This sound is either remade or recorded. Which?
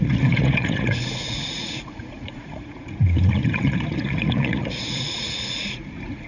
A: remade